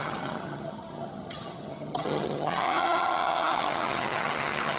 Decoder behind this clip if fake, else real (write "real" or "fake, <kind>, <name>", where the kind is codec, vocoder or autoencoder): fake, vocoder, HiFi-GAN